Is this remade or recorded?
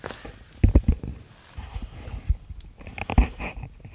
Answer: recorded